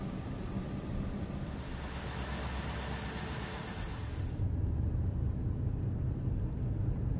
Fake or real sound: real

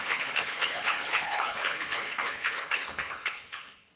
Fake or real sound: fake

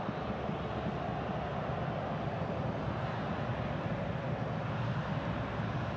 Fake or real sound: real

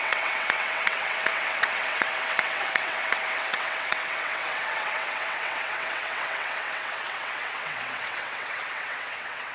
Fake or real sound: fake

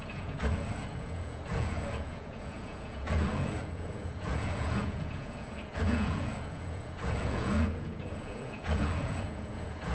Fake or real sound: fake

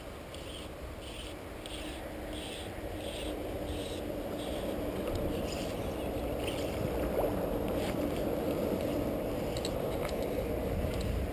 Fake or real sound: real